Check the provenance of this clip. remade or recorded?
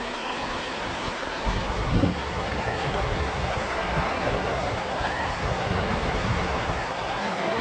remade